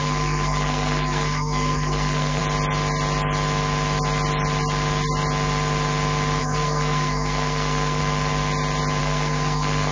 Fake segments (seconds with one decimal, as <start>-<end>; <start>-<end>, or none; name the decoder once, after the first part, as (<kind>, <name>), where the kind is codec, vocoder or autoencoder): 0.0-2.4 (codec, SNAC); 6.4-8.0; 9.0-9.9

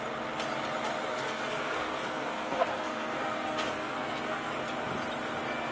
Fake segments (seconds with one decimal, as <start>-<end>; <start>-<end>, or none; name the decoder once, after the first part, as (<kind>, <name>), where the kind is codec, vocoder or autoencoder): 1.1-4.5 (codec, SNAC)

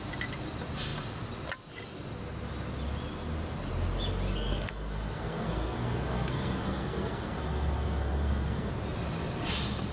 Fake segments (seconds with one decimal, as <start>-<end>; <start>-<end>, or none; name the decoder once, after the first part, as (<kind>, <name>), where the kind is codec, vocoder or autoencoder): 4.3-8.7 (codec, SNAC)

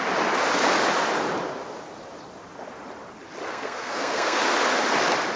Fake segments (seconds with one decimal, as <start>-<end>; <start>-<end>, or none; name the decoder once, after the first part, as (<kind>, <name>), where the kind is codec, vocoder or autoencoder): 3.5-4.4 (codec, SNAC)

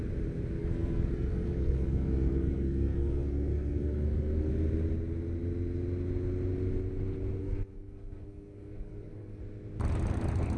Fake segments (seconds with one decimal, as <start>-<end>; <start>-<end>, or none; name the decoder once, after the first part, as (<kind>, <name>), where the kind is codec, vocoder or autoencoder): 0.6-4.5 (codec, SNAC); 7.4-9.4

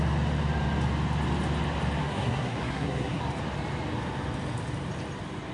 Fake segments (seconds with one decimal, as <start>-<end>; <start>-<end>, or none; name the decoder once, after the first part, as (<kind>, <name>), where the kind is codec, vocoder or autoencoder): 2.0-3.2 (codec, SNAC)

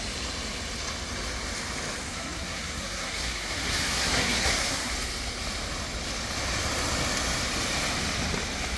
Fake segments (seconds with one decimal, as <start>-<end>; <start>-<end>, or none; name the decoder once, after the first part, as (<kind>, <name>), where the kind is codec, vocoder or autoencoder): 2.1-4.9 (codec, SNAC)

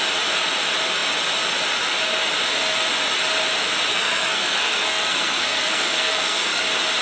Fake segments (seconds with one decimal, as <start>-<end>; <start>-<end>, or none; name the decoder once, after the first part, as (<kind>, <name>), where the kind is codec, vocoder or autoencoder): 3.9-6.6 (codec, SNAC)